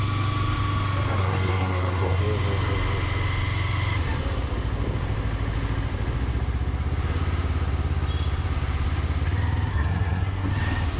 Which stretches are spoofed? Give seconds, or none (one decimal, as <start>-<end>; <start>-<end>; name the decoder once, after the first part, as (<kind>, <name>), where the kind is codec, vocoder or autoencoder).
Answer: 1.2-2.2 (codec, SNAC); 9.7-10.5